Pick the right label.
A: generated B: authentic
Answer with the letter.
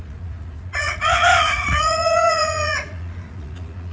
A